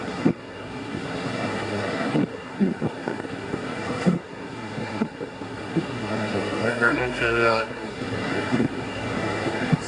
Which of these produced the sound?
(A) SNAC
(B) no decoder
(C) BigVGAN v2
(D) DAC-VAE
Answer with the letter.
A